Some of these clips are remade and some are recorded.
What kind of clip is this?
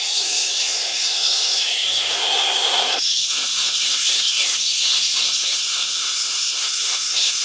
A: remade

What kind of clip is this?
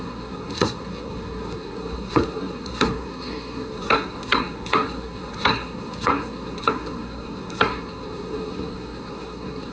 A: remade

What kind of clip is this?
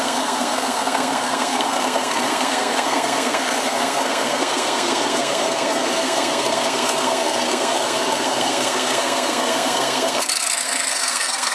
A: remade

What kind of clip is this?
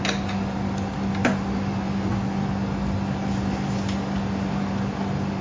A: recorded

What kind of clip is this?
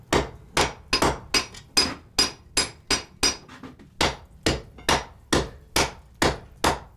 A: recorded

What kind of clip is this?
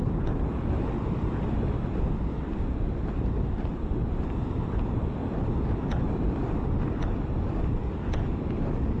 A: recorded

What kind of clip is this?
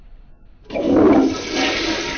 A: recorded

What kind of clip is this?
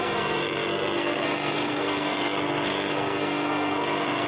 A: remade